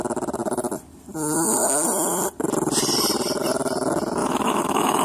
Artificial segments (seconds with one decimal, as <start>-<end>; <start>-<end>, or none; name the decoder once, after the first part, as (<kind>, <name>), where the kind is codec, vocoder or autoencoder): 4.2-5.0 (autoencoder, DAC-VAE)